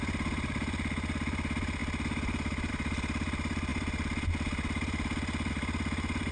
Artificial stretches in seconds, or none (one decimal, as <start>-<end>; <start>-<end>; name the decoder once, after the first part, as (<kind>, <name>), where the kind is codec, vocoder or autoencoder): none